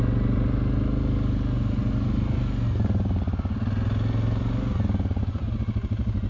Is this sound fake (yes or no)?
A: no